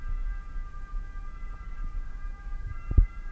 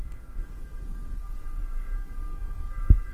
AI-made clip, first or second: second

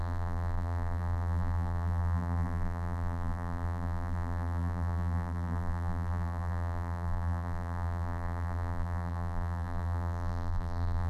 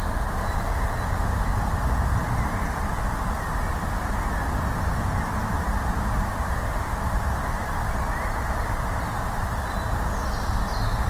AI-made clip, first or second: first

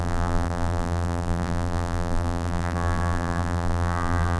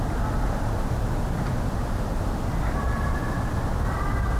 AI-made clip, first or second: first